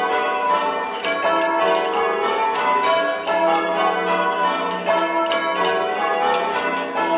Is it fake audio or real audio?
real